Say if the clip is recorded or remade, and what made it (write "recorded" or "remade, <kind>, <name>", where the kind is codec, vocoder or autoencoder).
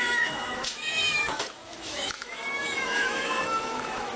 remade, autoencoder, DAC-VAE